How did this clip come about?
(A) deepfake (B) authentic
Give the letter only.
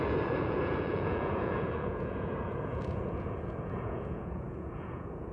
A